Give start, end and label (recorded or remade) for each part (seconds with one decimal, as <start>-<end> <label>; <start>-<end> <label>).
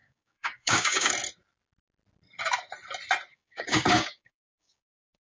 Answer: 0.0-1.1 remade; 1.1-3.3 recorded; 3.3-5.3 remade